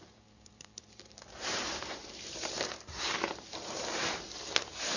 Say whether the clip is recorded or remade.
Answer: remade